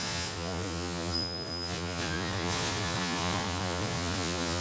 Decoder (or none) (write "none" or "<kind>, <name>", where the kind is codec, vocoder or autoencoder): vocoder, Vocos